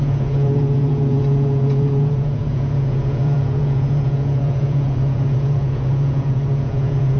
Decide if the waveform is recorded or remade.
remade